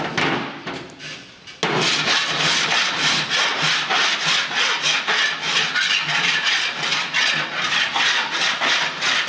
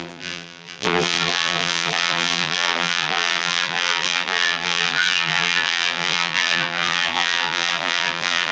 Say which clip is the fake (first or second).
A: second